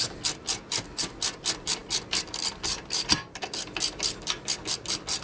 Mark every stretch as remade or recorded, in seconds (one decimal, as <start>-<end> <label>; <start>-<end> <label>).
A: 0.0-5.2 recorded